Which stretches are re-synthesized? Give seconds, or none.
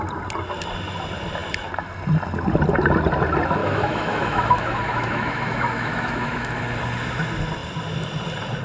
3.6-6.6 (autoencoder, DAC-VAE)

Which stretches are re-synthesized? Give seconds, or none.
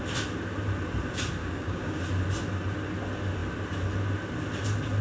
1.4-2.0 (codec, DAC)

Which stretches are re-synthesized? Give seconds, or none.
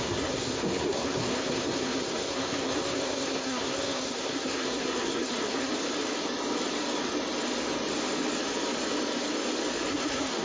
0.0-5.7 (codec, SNAC); 9.9-10.4